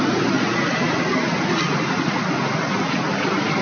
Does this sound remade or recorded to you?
recorded